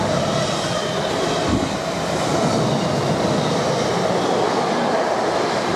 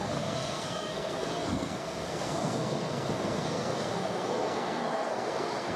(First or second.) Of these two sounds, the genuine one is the first